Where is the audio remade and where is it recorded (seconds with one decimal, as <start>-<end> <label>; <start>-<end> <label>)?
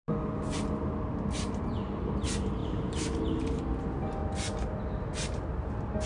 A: 0.0-2.6 recorded; 2.6-3.6 remade; 3.6-6.1 recorded